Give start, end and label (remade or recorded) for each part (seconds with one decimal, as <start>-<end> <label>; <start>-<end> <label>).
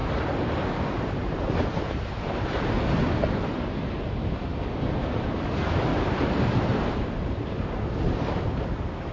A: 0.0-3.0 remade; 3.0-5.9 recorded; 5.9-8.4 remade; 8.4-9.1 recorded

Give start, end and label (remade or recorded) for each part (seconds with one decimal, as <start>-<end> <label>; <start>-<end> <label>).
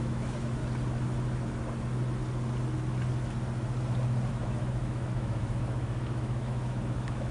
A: 0.0-0.6 remade; 0.6-4.3 recorded; 4.3-7.3 remade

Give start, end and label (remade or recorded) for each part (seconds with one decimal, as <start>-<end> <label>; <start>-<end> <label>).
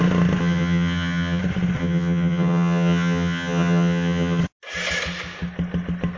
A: 0.0-0.4 recorded; 0.4-1.4 remade; 1.4-1.8 recorded; 1.8-4.4 remade; 4.4-6.2 recorded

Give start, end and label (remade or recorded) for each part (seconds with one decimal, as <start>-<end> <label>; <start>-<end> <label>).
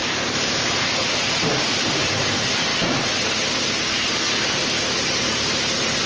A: 0.0-6.1 recorded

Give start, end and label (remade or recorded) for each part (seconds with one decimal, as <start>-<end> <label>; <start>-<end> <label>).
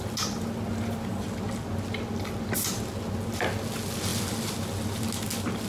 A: 0.0-5.7 recorded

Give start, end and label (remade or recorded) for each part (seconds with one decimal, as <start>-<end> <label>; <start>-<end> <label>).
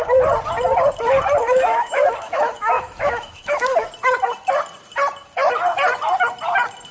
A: 0.0-1.4 recorded; 1.4-3.9 remade; 3.9-6.9 recorded